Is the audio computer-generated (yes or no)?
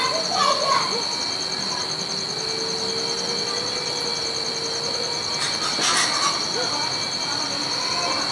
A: no